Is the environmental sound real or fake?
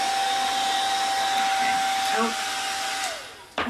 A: real